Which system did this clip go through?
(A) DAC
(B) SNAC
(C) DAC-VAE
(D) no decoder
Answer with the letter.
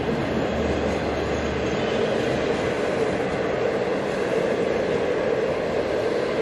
D